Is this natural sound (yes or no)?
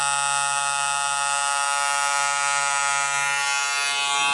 yes